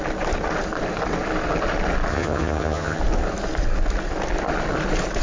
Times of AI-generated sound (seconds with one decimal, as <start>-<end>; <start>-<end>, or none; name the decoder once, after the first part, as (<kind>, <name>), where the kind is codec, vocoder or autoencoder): 2.1-3.0 (vocoder, HiFi-GAN)